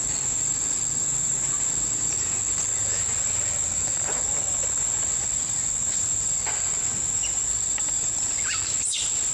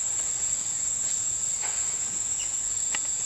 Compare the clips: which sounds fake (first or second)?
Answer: second